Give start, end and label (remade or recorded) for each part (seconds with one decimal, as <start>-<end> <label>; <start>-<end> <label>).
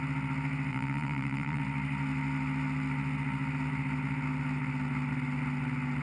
0.0-0.7 recorded; 0.7-1.6 remade; 1.6-6.0 recorded